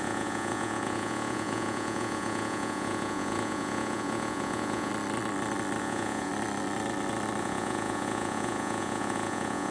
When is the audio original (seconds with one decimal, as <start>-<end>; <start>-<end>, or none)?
4.9-5.8; 6.3-7.4